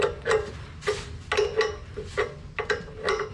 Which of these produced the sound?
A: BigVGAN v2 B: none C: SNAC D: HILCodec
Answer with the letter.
B